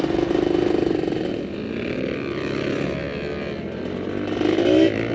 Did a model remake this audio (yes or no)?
no